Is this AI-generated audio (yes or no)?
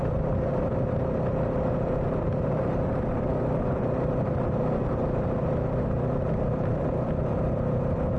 yes